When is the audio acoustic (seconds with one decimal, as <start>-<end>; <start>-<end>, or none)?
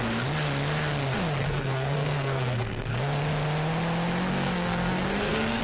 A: 0.0-1.4; 2.9-4.3